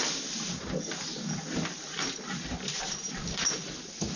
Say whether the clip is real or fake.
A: real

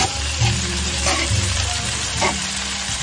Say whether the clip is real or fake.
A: fake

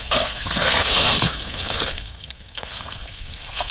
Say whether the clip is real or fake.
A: fake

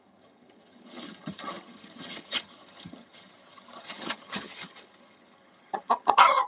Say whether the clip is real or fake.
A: fake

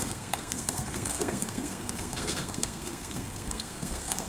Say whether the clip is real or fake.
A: fake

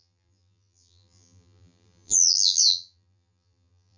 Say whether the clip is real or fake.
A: fake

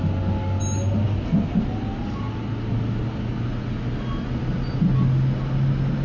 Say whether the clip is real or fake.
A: real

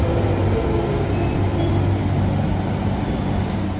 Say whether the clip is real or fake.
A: real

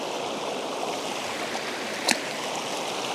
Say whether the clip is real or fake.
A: real